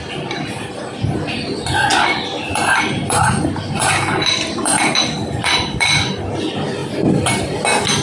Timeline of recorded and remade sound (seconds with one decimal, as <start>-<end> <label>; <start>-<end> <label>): 0.0-1.9 recorded; 1.9-6.1 remade; 6.1-6.8 recorded; 6.8-7.4 remade; 7.4-8.0 recorded

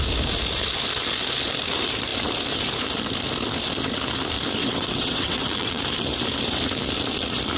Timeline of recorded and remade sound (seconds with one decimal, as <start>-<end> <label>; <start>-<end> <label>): 0.0-4.6 recorded; 4.6-5.8 remade; 5.8-7.6 recorded